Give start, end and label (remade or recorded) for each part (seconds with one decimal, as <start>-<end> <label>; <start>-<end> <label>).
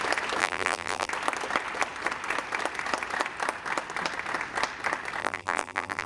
0.0-0.4 recorded; 0.4-1.1 remade; 1.1-5.2 recorded; 5.2-6.1 remade